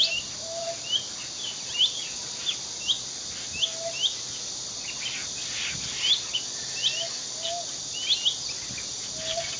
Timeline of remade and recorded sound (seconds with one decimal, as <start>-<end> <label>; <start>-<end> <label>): 0.0-9.6 recorded